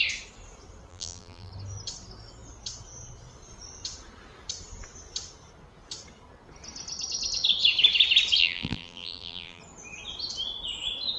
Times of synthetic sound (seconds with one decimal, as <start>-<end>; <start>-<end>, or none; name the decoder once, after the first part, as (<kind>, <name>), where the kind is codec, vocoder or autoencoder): 0.9-1.5 (vocoder, BigVGAN v2); 8.4-9.6